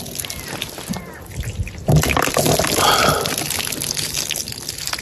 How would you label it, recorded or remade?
recorded